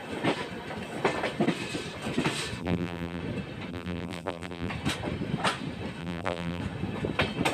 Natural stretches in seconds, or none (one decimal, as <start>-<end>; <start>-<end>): 0.0-2.6; 3.2-3.7; 4.7-6.0; 6.6-7.5